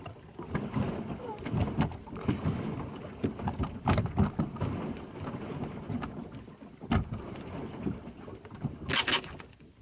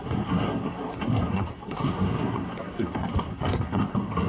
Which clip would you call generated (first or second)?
second